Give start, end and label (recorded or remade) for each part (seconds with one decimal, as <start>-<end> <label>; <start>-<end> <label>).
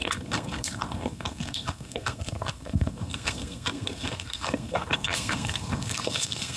0.0-6.6 remade